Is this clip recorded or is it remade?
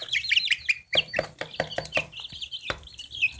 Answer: recorded